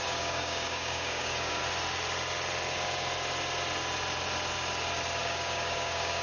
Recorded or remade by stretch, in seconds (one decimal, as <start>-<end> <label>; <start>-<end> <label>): 0.0-1.6 remade; 1.6-5.2 recorded; 5.2-6.2 remade